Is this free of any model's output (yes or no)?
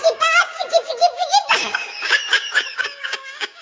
no